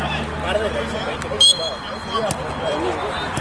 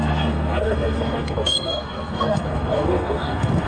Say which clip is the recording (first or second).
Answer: first